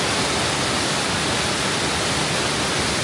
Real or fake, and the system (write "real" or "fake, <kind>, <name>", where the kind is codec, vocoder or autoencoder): fake, vocoder, BigVGAN v2